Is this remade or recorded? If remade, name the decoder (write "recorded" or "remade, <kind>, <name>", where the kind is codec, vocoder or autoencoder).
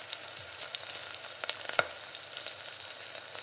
recorded